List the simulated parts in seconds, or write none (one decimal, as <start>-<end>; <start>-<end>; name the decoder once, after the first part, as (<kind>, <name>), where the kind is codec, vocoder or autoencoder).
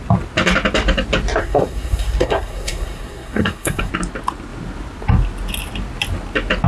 1.4-3.9 (codec, SNAC)